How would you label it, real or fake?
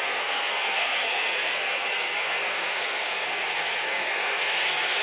fake